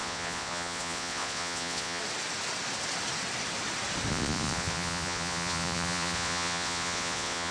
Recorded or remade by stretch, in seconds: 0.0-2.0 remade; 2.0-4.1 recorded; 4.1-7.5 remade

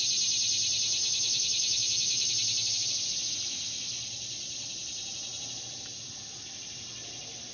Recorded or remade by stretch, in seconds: 0.0-1.0 recorded; 1.0-2.3 remade; 2.3-7.5 recorded

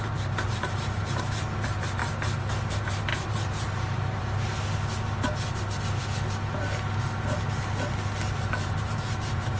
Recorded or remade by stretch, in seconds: 0.0-2.0 remade; 2.0-2.7 recorded; 2.7-4.5 remade; 4.5-8.3 recorded; 8.3-9.6 remade

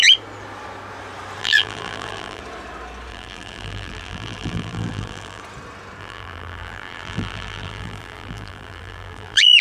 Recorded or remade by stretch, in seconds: 0.0-1.4 recorded; 1.4-2.4 remade; 2.4-3.1 recorded; 3.1-5.4 remade; 5.4-6.0 recorded; 6.0-9.6 remade

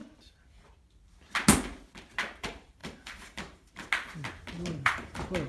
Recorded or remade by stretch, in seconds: 0.0-2.4 recorded; 2.4-3.9 remade; 3.9-4.7 recorded; 4.7-5.5 remade

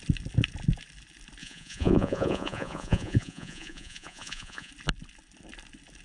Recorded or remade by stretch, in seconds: 0.0-1.4 recorded; 1.4-4.7 remade; 4.7-6.0 recorded